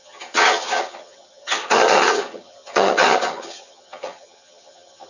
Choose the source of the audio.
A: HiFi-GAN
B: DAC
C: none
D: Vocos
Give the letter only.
A